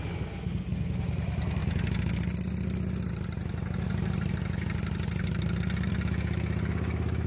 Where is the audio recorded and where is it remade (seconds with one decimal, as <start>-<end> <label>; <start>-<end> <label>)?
0.0-7.3 recorded